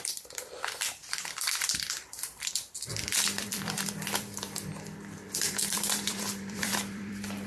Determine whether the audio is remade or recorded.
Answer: remade